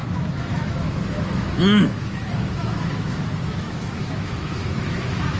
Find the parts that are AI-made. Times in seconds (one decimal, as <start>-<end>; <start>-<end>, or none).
0.0-5.4

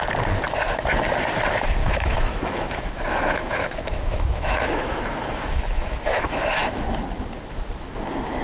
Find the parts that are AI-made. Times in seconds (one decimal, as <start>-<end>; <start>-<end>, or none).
1.8-6.8